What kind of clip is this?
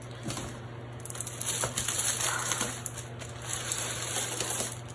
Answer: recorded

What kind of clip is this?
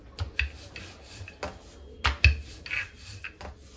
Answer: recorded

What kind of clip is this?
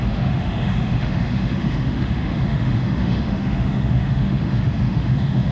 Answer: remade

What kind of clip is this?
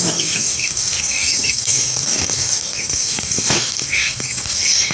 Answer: remade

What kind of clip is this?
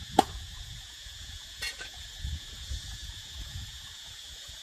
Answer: remade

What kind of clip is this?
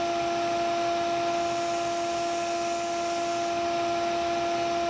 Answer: recorded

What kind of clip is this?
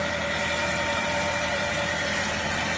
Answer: remade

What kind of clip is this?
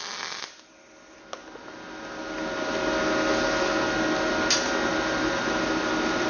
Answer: recorded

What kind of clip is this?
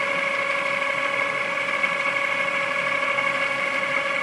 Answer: recorded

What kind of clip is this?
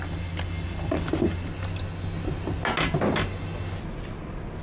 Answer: recorded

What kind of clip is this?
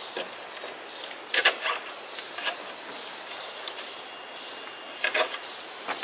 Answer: recorded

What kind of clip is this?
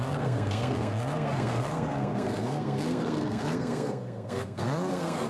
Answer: remade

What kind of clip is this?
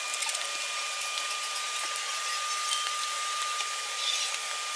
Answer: recorded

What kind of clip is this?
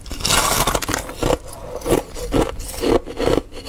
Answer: recorded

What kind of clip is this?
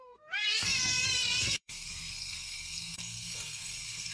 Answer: remade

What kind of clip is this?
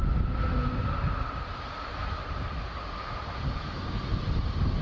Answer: recorded